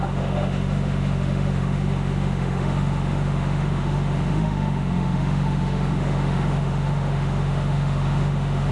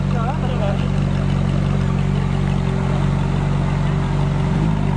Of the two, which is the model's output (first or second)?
first